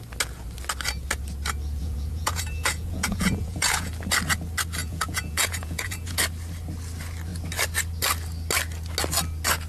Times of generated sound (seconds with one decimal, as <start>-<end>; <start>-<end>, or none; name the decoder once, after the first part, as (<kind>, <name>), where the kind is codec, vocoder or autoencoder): 1.8-3.9 (vocoder, Vocos); 4.8-6.2